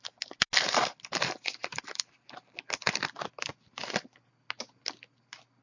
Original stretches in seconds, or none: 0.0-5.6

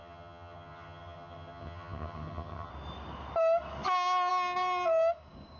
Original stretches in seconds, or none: 2.7-5.6

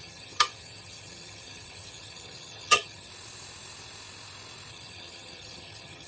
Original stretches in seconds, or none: 3.1-4.7

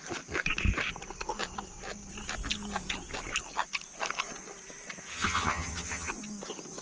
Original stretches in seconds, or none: 0.0-5.1; 6.1-6.8

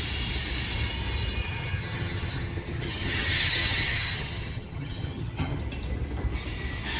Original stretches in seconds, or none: 0.0-1.4; 5.6-7.0